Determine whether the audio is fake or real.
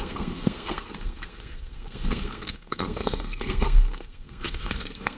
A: fake